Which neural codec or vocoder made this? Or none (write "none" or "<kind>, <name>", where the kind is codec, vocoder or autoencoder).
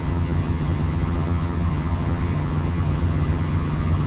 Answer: vocoder, HiFi-GAN